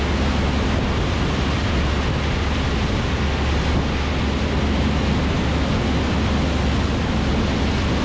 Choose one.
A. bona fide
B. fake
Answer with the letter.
A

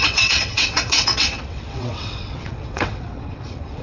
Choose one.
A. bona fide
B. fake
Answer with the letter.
B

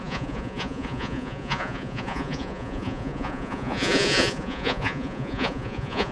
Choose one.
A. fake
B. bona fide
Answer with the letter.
A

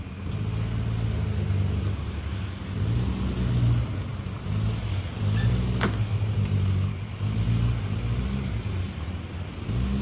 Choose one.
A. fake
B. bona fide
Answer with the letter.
B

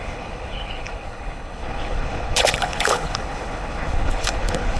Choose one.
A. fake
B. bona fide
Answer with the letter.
A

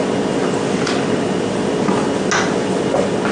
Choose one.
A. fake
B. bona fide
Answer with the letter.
B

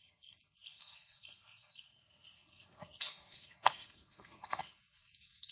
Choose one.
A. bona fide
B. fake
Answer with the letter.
B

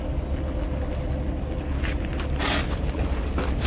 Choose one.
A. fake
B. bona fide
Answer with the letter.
B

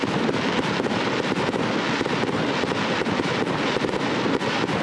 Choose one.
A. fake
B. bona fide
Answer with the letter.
B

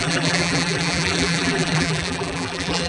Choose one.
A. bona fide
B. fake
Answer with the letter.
B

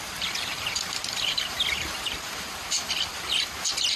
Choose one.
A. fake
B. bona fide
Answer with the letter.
A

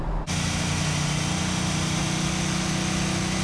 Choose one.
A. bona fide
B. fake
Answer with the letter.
A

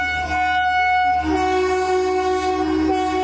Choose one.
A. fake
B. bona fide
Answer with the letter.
B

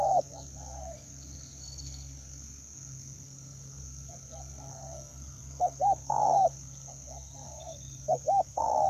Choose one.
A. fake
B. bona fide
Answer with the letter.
A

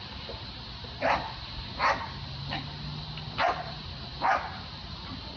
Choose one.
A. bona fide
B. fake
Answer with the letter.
A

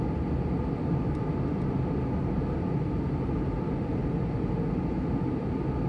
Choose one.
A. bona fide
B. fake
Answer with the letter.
A